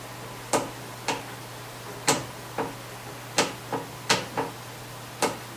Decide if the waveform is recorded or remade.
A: recorded